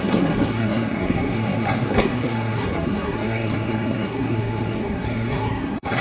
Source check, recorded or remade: remade